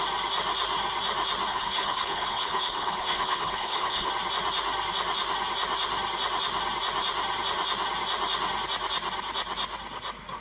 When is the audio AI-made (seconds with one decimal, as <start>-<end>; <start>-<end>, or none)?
1.5-4.1